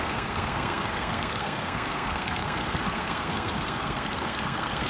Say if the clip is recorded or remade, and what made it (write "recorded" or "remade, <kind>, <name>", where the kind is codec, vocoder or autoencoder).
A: remade, codec, SNAC